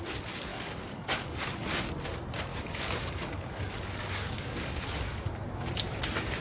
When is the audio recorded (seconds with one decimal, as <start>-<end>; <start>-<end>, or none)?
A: 0.0-0.5; 1.5-2.5; 5.3-6.4